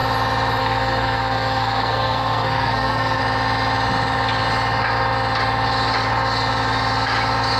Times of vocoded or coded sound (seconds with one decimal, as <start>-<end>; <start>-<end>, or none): 0.6-3.2